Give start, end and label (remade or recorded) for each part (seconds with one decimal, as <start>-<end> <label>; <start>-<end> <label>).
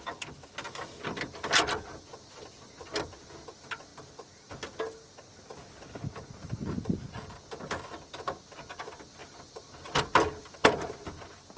0.0-11.6 recorded